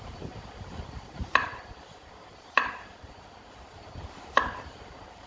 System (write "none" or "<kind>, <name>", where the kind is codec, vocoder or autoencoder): vocoder, BigVGAN v2